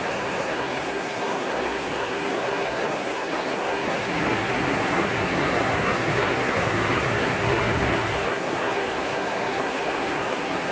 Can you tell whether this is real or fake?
fake